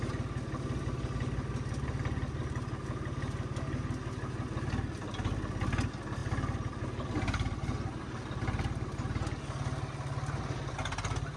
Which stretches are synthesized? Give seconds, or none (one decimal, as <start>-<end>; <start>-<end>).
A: 6.2-8.0